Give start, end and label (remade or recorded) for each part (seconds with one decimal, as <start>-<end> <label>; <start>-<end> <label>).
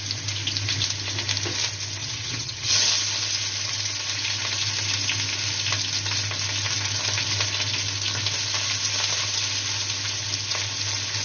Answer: 0.0-2.0 recorded; 2.0-2.7 remade; 2.7-11.2 recorded